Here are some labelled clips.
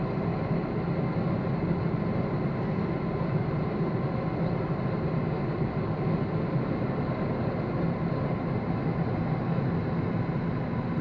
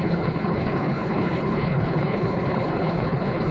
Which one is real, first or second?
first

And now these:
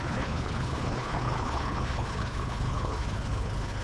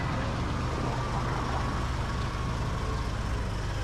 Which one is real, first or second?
second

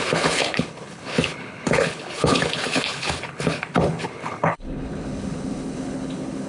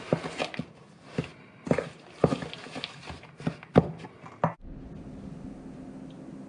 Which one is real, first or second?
second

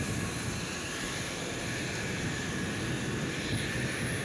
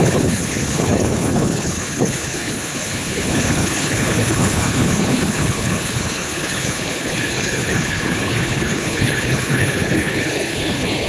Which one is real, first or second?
first